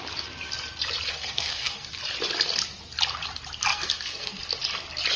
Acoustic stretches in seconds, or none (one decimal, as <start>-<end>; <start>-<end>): 0.0-1.1; 2.0-3.7; 4.4-5.2